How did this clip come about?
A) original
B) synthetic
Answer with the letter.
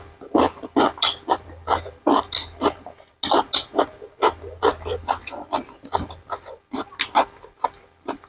A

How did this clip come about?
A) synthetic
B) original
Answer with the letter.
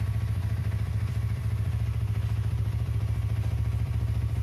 A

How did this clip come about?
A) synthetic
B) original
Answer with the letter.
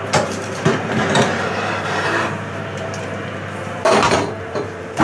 A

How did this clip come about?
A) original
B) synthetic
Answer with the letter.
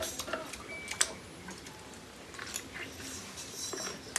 A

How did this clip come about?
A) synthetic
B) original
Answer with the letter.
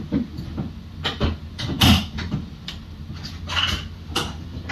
B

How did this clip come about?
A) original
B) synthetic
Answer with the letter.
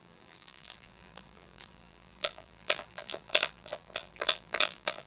B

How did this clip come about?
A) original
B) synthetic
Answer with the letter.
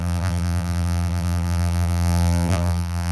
B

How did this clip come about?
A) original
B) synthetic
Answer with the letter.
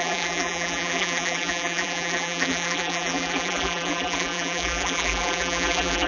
B